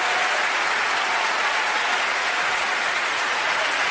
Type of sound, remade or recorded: remade